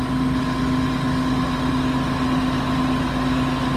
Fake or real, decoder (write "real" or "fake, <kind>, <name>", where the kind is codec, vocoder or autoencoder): real